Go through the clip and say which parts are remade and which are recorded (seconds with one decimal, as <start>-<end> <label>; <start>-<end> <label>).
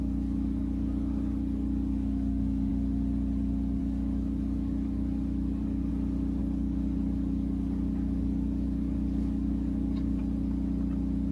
0.0-2.7 remade; 2.7-3.8 recorded; 3.8-5.9 remade; 5.9-6.4 recorded; 6.4-10.2 remade; 10.2-11.3 recorded